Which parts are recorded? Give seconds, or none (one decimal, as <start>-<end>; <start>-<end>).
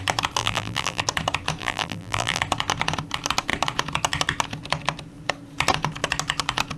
0.0-0.4; 1.0-1.6; 2.4-6.8